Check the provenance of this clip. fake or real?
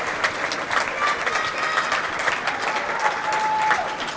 real